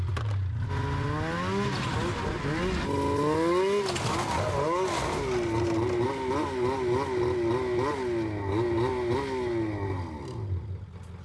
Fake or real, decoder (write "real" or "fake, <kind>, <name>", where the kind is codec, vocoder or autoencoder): real